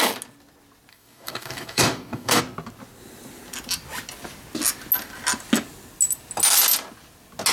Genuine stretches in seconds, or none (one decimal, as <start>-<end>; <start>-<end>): 0.0-0.9; 2.4-7.5